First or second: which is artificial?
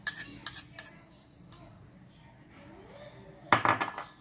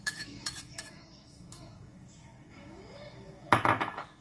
second